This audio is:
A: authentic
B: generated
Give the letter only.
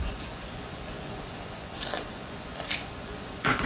B